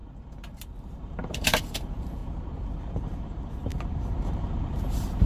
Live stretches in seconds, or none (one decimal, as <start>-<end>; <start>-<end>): 2.2-2.8